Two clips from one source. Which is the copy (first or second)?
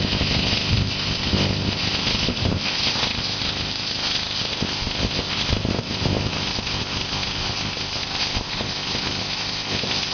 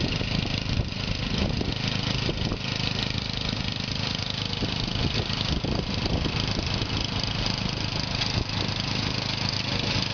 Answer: first